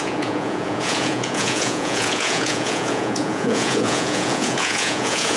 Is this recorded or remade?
remade